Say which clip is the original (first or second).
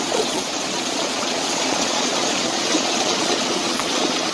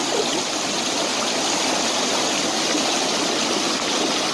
second